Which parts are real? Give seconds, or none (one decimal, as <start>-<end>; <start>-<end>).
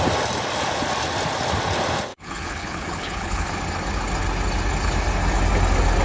0.0-2.1; 3.5-6.0